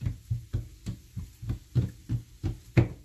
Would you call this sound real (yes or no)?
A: yes